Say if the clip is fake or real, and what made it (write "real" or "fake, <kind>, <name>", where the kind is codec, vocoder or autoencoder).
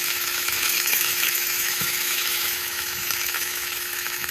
fake, autoencoder, DAC-VAE